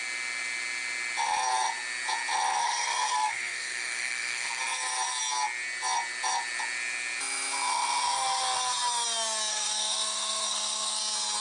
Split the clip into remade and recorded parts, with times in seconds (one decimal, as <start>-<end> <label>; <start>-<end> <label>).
0.0-2.6 recorded; 2.6-4.6 remade; 4.6-9.5 recorded; 9.5-11.0 remade; 11.0-11.4 recorded